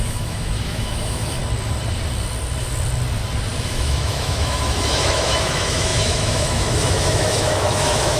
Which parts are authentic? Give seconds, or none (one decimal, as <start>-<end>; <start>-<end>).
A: 1.4-3.7